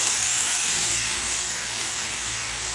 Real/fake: fake